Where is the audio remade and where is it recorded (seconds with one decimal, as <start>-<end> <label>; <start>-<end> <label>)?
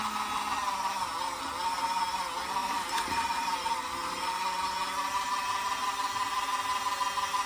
0.0-2.6 recorded; 2.6-7.0 remade; 7.0-7.5 recorded